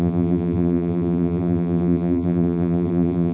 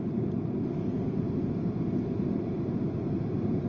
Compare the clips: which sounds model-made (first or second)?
first